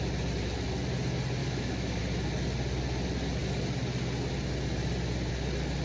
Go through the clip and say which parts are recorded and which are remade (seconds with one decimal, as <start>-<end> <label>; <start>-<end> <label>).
0.0-1.4 recorded; 1.4-2.0 remade; 2.0-5.8 recorded